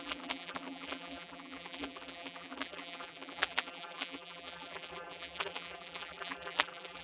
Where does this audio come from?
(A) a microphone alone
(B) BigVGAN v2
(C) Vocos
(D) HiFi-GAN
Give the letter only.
B